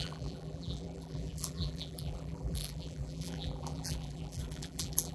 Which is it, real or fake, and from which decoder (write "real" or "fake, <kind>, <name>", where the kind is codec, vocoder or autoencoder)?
fake, vocoder, BigVGAN v2